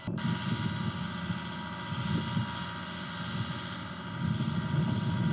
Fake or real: real